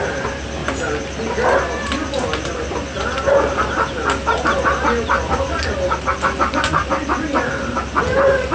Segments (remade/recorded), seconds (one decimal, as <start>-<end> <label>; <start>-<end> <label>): 0.0-8.5 recorded